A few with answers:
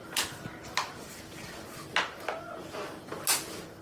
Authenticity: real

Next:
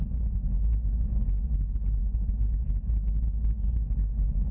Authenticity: real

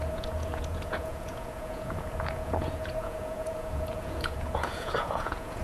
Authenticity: fake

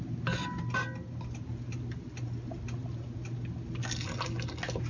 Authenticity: real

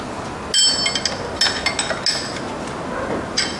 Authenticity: real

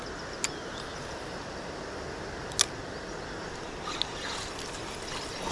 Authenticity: real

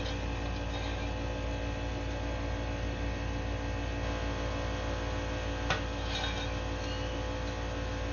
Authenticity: real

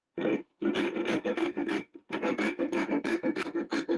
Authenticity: fake